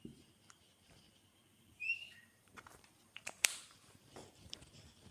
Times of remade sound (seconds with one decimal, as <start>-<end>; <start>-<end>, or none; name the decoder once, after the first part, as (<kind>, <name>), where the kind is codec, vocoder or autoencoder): 1.5-4.6 (vocoder, BigVGAN v2)